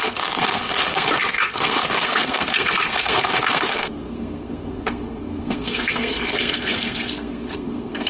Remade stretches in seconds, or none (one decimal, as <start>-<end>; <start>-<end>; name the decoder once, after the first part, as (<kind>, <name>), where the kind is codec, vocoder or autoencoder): 0.0-8.1 (codec, SNAC)